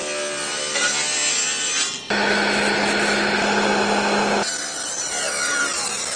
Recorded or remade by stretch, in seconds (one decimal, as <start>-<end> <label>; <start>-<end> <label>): 0.0-6.2 recorded